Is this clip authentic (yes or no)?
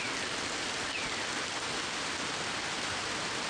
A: yes